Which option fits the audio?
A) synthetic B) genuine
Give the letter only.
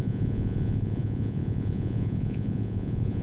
A